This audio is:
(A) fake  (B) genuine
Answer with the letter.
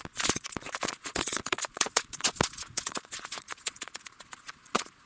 A